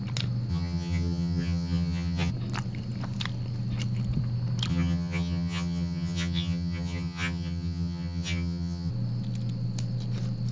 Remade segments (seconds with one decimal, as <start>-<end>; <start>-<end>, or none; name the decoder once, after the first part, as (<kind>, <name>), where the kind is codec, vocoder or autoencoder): 0.5-2.3 (vocoder, HiFi-GAN); 4.7-8.9